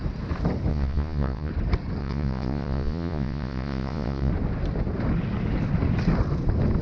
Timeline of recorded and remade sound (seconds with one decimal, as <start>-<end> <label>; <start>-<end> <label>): 0.0-0.7 recorded; 0.7-1.5 remade; 1.5-2.0 recorded; 2.0-4.3 remade; 4.3-6.8 recorded